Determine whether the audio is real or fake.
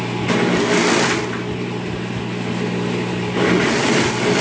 real